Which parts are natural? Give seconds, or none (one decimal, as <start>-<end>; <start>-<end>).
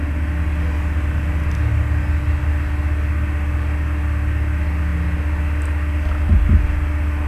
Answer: 0.0-7.3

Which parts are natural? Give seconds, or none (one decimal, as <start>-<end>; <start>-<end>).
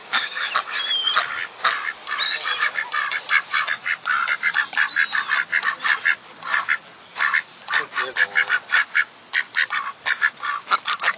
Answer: 0.5-11.2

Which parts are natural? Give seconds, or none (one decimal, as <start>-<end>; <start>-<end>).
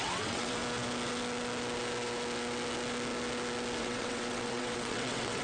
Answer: 0.6-3.8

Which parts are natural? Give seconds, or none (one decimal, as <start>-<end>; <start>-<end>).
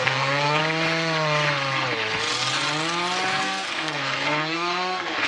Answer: 0.6-3.4